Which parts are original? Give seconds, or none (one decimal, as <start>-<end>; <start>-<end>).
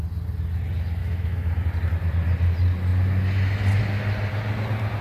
0.0-1.0; 1.5-5.0